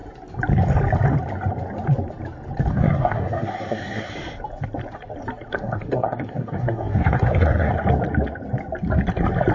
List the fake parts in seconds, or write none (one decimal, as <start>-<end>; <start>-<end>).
2.7-4.1; 5.5-7.7